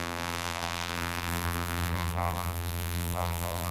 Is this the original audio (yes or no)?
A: no